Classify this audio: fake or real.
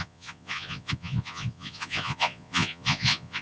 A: fake